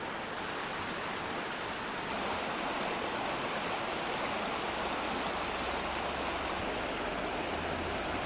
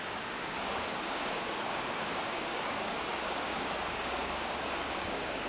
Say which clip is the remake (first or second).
second